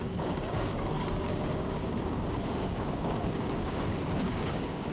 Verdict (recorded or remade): remade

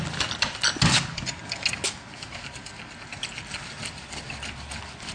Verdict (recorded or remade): recorded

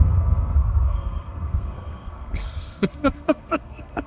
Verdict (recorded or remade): remade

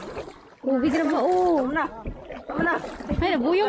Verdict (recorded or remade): recorded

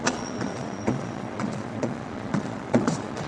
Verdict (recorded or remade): remade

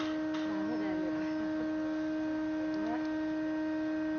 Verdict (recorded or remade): recorded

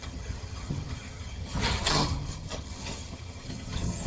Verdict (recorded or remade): remade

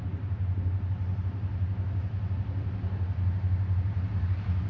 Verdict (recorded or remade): recorded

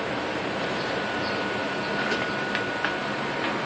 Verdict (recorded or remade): recorded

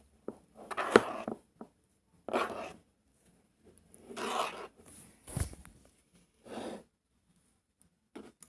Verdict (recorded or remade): recorded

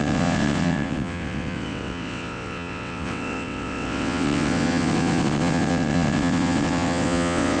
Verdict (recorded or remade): remade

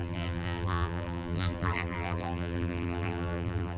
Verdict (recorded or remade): remade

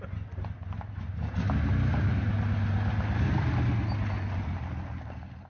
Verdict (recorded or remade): recorded